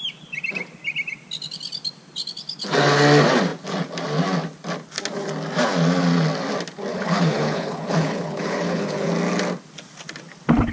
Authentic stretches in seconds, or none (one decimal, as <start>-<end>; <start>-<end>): 0.0-6.9; 9.1-10.7

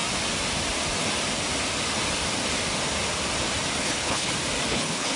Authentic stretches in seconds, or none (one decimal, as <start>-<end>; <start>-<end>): 0.0-3.8; 4.3-4.7

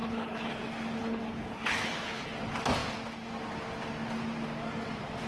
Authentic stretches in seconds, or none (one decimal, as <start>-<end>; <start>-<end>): 0.6-1.0; 2.3-5.3

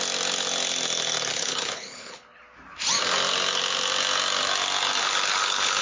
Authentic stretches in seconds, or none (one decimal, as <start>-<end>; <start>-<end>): 0.0-1.3; 2.4-5.0

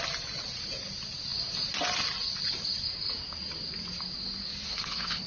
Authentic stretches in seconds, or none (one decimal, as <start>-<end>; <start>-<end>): 0.0-4.7

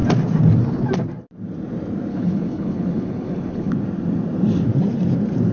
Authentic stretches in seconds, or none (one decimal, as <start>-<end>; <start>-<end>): 0.0-2.1; 3.7-5.5

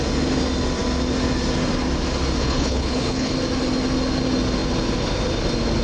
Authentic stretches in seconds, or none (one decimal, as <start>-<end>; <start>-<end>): 0.0-2.4; 3.3-5.8

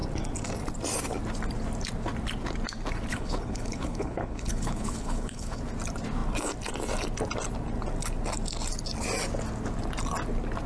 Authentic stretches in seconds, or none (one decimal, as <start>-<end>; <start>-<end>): 0.0-3.1; 5.6-10.7